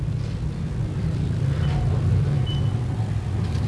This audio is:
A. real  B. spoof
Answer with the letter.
A